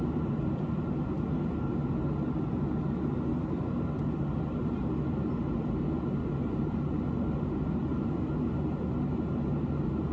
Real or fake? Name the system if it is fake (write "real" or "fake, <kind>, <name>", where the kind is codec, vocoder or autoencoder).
real